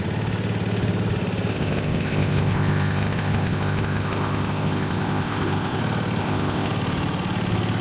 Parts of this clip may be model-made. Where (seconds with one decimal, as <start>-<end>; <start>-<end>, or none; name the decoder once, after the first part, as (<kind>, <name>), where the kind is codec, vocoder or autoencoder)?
1.5-5.8 (codec, ZipCodec); 6.2-6.7